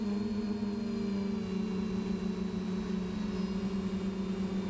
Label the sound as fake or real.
real